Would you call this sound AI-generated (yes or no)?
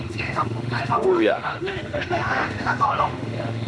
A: yes